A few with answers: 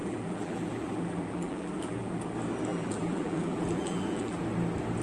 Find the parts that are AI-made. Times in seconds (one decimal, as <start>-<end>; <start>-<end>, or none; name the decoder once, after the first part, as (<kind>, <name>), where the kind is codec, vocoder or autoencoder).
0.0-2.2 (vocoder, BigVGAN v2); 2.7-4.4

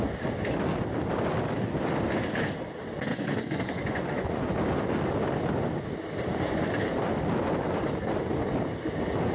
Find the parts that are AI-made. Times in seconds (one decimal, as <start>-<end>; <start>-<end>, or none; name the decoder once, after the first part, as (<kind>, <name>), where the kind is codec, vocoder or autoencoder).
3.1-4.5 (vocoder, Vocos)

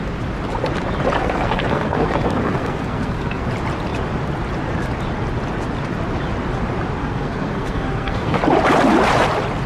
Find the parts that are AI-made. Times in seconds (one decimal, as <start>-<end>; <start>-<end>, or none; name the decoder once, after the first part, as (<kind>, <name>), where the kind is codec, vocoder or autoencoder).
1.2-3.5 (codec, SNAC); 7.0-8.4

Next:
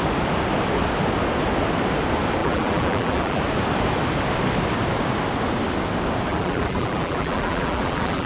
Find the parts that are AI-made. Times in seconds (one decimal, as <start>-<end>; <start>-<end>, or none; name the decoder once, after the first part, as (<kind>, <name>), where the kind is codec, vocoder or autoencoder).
2.4-3.4 (vocoder, BigVGAN v2); 6.3-8.3

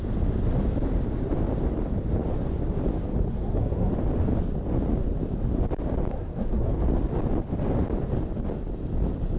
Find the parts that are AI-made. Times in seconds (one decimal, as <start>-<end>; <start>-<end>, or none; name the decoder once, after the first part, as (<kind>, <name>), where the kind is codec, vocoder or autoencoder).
3.3-3.9 (codec, SNAC); 6.1-6.7

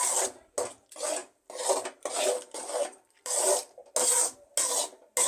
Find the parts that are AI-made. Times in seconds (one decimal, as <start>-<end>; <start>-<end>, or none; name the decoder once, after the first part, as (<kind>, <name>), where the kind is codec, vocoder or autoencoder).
none

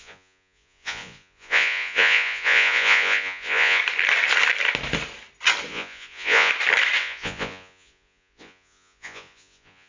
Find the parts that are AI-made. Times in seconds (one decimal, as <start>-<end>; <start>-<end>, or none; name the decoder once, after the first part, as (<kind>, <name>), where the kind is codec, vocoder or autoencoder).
0.0-3.8 (vocoder, Vocos); 5.7-6.5; 7.0-9.9